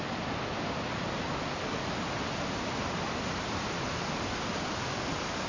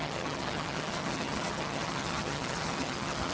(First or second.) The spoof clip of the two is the second